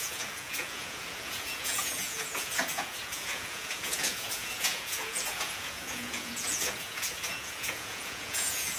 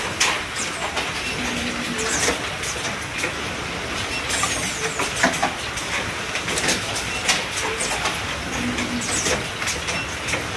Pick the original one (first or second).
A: second